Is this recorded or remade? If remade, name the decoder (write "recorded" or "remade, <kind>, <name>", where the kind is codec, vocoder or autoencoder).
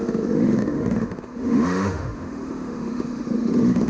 remade, autoencoder, DAC-VAE